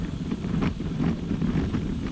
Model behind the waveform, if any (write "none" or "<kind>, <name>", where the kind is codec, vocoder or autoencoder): vocoder, BigVGAN v2